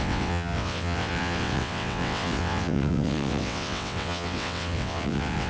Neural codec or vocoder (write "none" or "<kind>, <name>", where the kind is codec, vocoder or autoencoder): vocoder, WaveNeXt